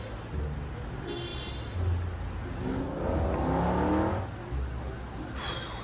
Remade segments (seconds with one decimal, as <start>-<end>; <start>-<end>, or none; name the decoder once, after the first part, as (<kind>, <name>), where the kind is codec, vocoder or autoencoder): none